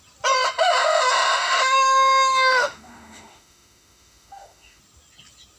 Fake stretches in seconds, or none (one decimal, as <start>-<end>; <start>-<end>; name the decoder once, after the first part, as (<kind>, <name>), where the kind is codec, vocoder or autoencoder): 1.4-4.8 (autoencoder, DAC-VAE)